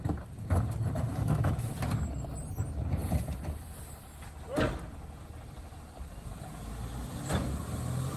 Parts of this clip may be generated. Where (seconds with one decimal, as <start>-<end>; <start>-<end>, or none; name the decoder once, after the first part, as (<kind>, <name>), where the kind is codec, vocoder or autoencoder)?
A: 1.1-1.7 (autoencoder, DAC-VAE)